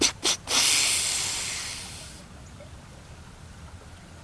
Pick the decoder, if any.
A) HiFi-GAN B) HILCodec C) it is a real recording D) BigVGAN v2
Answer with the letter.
C